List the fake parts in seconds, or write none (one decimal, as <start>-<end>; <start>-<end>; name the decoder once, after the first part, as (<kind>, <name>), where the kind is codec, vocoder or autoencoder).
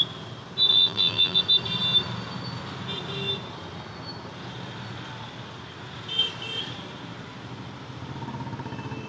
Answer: 0.7-1.4 (vocoder, BigVGAN v2)